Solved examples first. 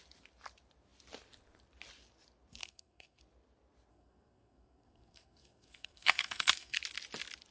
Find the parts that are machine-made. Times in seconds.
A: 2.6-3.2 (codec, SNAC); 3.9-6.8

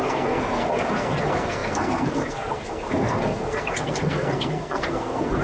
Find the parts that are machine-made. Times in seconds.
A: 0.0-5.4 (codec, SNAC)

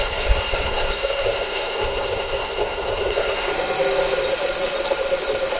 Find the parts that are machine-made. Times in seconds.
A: 0.0-3.5 (codec, SNAC)